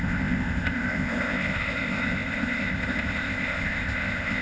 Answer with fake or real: fake